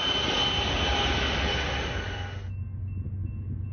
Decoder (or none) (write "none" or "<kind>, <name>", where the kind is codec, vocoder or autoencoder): none